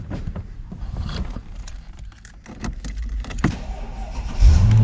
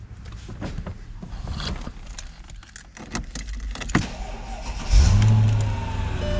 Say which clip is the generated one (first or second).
first